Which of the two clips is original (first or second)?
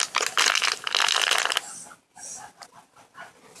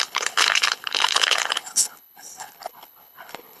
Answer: first